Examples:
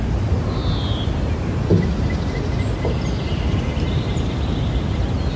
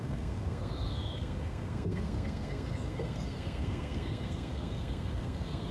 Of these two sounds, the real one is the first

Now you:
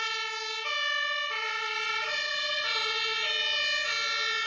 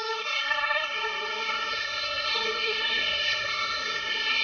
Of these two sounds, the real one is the first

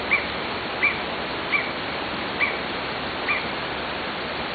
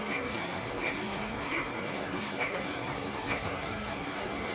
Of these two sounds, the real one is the first